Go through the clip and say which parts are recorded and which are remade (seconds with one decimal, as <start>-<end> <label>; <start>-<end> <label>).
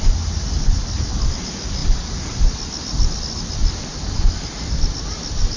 0.0-5.6 recorded